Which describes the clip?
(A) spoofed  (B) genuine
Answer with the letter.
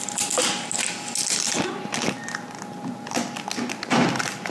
B